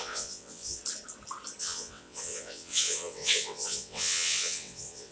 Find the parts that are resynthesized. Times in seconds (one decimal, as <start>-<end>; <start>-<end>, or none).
0.0-0.8; 1.6-5.1